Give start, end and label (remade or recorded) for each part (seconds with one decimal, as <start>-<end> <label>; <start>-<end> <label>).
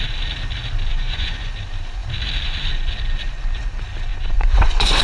0.0-0.9 recorded; 0.9-1.5 remade; 1.5-4.1 recorded; 4.1-5.0 remade